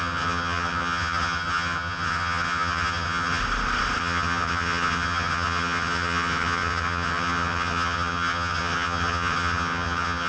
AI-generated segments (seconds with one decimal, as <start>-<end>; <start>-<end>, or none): 0.0-3.4; 4.0-10.3

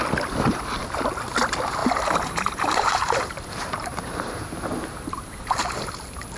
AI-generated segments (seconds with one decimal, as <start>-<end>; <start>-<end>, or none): 1.8-5.6

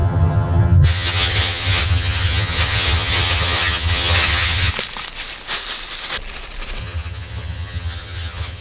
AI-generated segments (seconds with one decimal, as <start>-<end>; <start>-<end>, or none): 0.0-4.7; 6.8-8.6

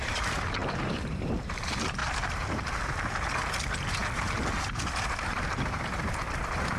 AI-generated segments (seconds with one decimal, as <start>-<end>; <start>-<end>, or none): 0.0-2.0; 3.6-4.0; 4.9-6.8

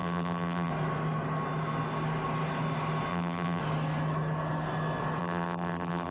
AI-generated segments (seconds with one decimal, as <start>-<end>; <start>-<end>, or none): 0.0-0.7; 3.1-3.6; 5.2-6.1

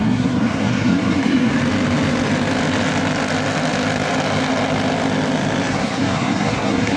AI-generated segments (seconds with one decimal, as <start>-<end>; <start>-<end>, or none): 0.0-1.5; 5.7-7.0

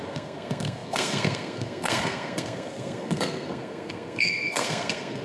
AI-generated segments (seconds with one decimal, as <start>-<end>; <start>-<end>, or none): 0.0-5.2

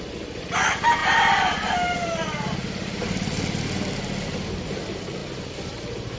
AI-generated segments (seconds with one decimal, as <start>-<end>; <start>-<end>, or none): none